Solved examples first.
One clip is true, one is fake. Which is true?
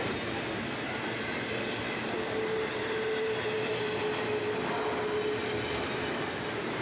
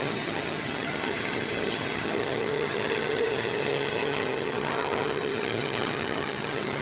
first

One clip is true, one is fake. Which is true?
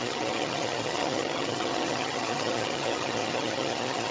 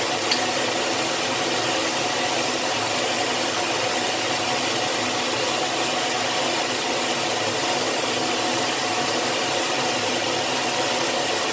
second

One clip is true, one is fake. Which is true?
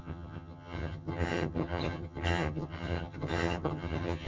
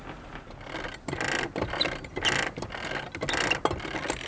second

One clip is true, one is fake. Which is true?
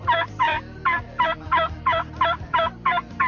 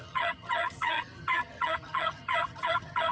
first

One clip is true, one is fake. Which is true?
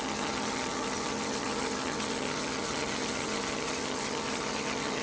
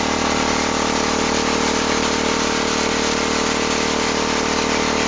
second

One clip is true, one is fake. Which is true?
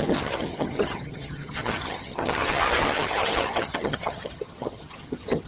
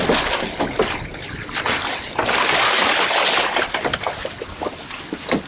second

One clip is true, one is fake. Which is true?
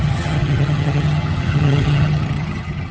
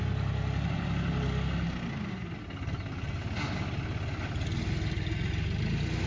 second